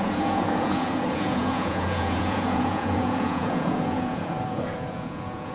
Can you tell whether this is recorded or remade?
remade